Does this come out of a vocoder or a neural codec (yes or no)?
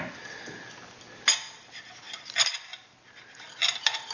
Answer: no